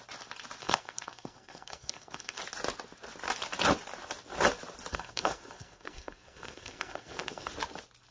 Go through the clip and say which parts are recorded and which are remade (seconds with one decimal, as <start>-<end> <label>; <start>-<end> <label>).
0.0-0.6 recorded; 0.6-2.4 remade; 2.4-4.9 recorded; 4.9-7.5 remade; 7.5-8.1 recorded